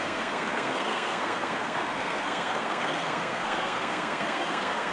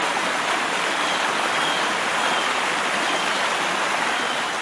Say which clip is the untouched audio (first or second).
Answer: second